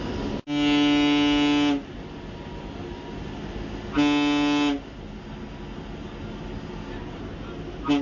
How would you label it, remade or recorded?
recorded